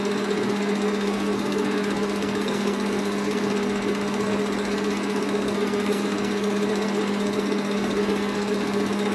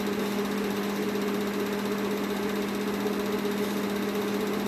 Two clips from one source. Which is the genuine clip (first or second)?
second